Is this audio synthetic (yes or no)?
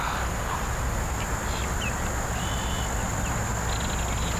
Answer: no